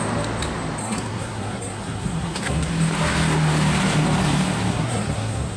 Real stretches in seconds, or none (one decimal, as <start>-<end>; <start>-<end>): 0.0-0.8; 2.7-4.7